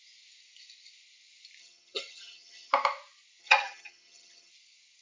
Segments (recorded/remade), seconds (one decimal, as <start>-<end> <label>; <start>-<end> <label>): 0.0-1.6 recorded; 1.6-2.7 remade; 2.7-3.4 recorded; 3.4-4.5 remade; 4.5-5.0 recorded